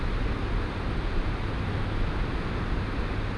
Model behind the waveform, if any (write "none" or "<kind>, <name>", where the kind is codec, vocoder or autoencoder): none